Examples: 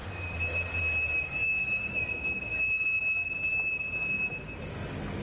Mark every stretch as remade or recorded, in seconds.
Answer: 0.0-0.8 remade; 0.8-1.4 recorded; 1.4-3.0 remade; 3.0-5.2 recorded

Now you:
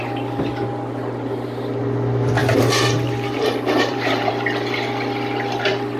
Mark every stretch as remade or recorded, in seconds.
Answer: 0.0-2.4 recorded; 2.4-4.3 remade; 4.3-6.0 recorded

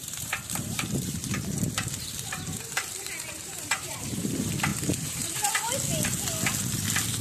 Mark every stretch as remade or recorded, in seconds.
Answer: 0.0-4.3 remade; 4.3-4.7 recorded; 4.7-5.5 remade; 5.5-7.2 recorded

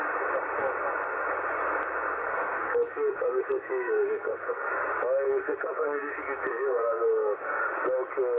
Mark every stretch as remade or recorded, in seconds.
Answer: 0.0-2.2 recorded; 2.2-4.7 remade; 4.7-5.4 recorded; 5.4-6.1 remade; 6.1-6.5 recorded; 6.5-7.6 remade; 7.6-8.4 recorded

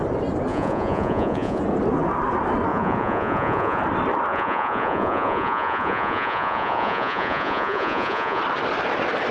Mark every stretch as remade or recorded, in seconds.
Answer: 0.0-0.5 recorded; 0.5-1.6 remade; 1.6-2.7 recorded; 2.7-3.8 remade; 3.8-4.3 recorded; 4.3-8.4 remade; 8.4-9.3 recorded

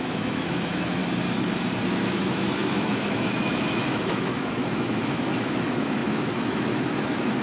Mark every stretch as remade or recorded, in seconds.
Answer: 0.0-1.0 remade; 1.0-1.9 recorded; 1.9-7.4 remade

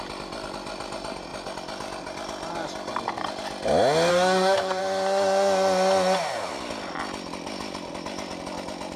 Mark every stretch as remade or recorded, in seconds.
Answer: 0.0-4.1 recorded; 4.1-4.8 remade; 4.8-9.0 recorded